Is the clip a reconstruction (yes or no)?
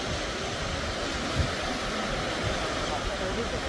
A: no